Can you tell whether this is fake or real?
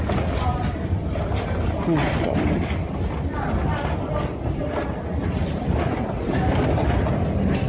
real